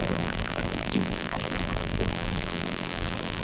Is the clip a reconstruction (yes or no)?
yes